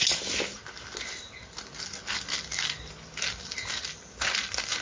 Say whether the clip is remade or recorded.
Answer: recorded